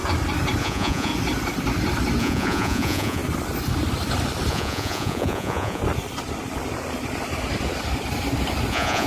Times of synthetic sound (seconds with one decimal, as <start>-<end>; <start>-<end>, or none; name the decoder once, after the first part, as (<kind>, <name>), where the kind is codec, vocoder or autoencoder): 0.6-1.1 (vocoder, Vocos); 2.2-3.2; 4.5-5.8; 8.7-9.1

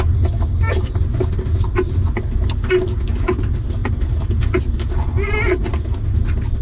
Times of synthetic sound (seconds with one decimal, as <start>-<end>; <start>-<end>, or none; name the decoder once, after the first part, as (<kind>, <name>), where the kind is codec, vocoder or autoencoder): none